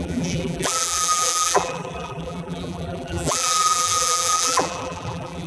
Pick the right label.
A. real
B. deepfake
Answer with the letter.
B